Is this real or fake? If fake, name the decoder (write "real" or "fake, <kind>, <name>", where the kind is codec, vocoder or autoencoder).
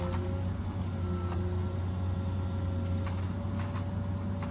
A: real